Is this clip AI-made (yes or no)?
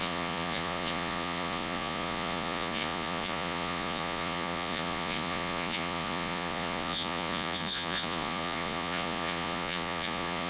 yes